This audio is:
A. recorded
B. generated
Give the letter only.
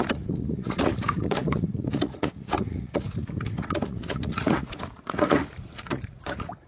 B